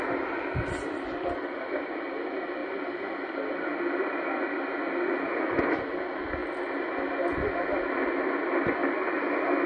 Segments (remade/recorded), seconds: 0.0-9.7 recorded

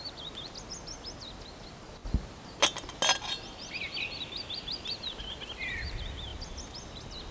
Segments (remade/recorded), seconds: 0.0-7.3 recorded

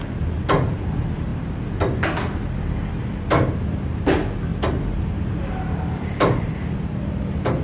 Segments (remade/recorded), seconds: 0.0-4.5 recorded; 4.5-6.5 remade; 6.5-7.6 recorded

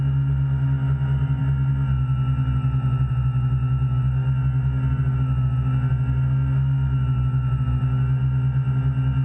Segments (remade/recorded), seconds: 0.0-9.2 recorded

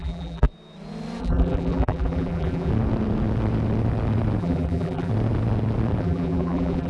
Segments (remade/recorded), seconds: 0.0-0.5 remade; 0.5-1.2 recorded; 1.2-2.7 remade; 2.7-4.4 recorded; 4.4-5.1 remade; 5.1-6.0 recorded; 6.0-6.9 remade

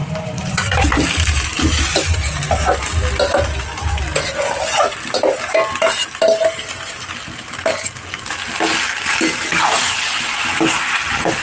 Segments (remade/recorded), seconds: 0.0-2.4 remade; 2.4-11.4 recorded

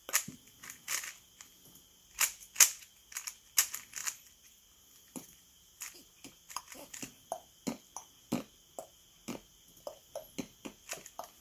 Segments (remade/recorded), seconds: 0.0-4.0 recorded; 4.0-6.6 remade; 6.6-11.4 recorded

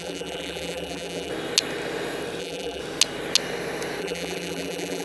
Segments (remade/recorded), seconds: 0.0-1.3 remade; 1.3-2.4 recorded; 2.4-2.8 remade; 2.8-4.0 recorded; 4.0-5.0 remade